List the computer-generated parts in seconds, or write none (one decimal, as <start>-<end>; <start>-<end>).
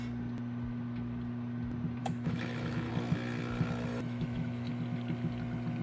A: 2.0-2.9; 3.9-4.7